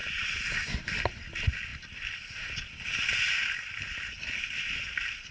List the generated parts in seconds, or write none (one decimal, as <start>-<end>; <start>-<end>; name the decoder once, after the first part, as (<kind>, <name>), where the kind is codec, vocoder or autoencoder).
0.0-0.9 (vocoder, BigVGAN v2)